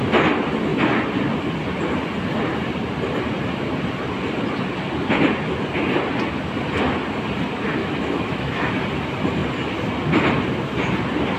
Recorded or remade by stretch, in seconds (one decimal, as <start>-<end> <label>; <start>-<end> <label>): 0.0-7.8 recorded; 7.8-8.7 remade; 8.7-11.4 recorded